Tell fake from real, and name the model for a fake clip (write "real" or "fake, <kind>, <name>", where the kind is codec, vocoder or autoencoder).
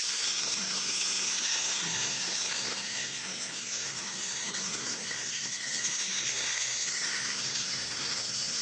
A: fake, codec, SNAC